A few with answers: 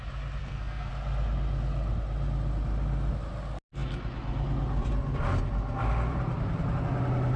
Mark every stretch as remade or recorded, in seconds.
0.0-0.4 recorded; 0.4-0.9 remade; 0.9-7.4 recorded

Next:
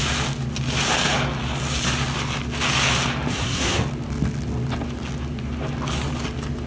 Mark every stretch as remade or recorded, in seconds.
0.0-3.3 recorded; 3.3-3.8 remade; 3.8-6.7 recorded

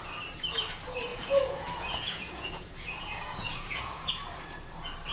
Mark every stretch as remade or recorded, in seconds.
0.0-1.1 recorded; 1.1-4.1 remade; 4.1-5.1 recorded

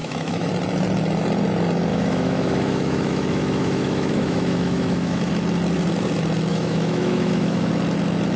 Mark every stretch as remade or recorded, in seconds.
0.0-0.5 remade; 0.5-1.9 recorded; 1.9-5.3 remade; 5.3-6.5 recorded; 6.5-7.7 remade; 7.7-8.4 recorded

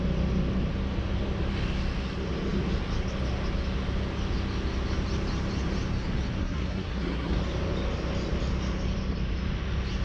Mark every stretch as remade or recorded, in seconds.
0.0-6.4 recorded; 6.4-7.4 remade; 7.4-10.0 recorded

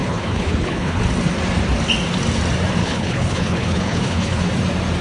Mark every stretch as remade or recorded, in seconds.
0.0-1.0 remade; 1.0-2.8 recorded; 2.8-4.4 remade; 4.4-5.0 recorded

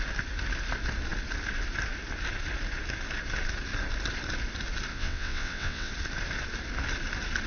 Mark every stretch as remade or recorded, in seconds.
0.0-4.9 recorded; 4.9-5.9 remade; 5.9-7.5 recorded

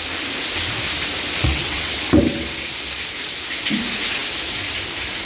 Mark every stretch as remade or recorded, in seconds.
0.0-1.4 recorded; 1.4-1.9 remade; 1.9-5.3 recorded